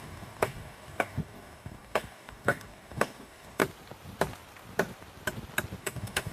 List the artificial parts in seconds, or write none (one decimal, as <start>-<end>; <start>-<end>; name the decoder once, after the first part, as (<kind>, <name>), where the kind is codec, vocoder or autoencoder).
0.0-3.6 (codec, DAC); 5.8-6.3